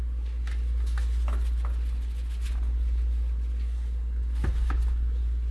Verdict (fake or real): real